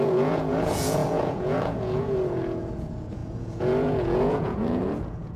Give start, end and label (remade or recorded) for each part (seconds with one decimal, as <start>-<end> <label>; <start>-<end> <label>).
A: 0.0-5.4 remade